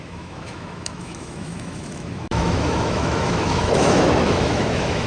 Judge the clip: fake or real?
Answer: fake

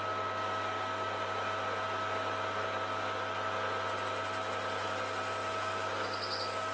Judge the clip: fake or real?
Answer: real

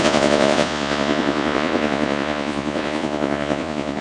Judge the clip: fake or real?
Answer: fake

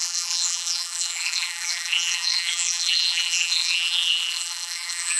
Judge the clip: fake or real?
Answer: fake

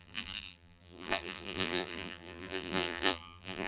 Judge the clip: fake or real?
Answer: fake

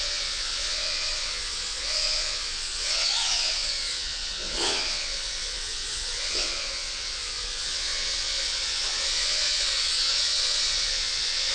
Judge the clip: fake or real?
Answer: fake